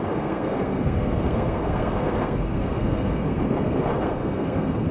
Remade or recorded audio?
remade